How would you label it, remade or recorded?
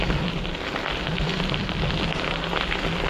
recorded